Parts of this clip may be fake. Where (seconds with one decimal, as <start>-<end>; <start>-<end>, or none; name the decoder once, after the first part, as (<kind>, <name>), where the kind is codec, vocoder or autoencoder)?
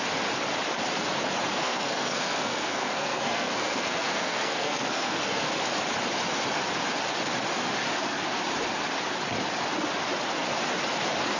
1.5-5.5 (codec, SNAC); 7.9-8.4